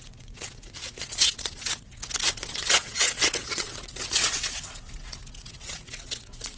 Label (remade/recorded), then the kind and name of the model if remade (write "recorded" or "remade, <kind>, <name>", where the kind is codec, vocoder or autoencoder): remade, vocoder, WaveNeXt